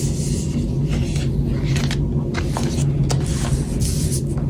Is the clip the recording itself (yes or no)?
yes